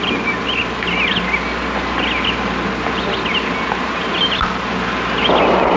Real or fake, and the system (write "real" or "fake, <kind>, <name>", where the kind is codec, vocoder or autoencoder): real